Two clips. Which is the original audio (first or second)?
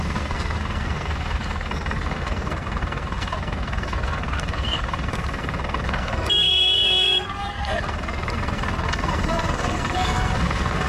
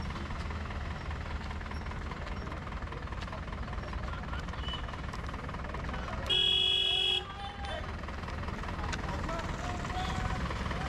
second